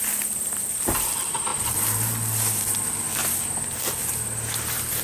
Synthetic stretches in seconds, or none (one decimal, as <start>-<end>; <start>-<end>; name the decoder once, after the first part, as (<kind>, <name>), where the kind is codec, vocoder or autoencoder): none

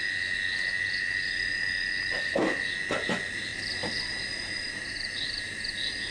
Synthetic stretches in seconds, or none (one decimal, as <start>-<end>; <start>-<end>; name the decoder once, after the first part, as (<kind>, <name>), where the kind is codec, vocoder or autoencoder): 3.5-5.6 (vocoder, BigVGAN v2)

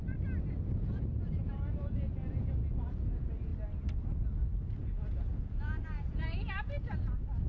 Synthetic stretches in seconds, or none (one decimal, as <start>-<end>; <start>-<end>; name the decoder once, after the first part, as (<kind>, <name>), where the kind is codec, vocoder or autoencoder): 0.7-3.5 (vocoder, Vocos); 4.8-7.5